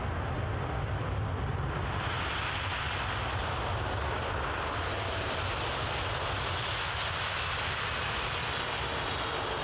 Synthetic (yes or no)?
no